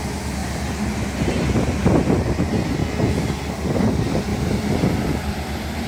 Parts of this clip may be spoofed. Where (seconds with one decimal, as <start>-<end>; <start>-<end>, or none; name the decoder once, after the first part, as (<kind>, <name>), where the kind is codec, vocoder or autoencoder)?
4.3-5.9 (vocoder, BigVGAN v2)